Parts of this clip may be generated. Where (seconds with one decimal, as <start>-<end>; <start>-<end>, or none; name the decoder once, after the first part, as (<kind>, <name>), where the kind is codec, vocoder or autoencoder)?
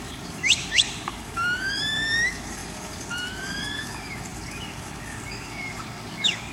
0.0-6.5 (codec, DAC)